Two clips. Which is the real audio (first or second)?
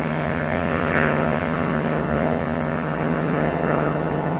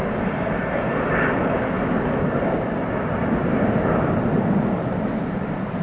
second